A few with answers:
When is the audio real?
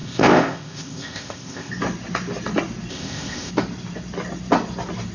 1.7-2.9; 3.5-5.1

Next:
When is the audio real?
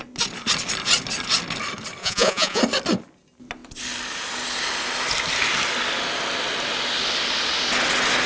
0.0-2.0; 2.6-8.3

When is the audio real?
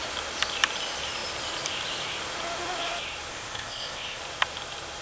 0.0-3.3; 4.2-5.0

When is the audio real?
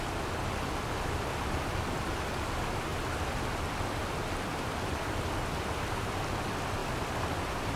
0.0-4.5; 5.2-7.8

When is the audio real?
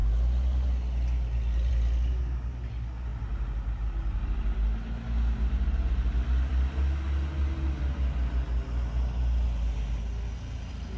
0.0-11.0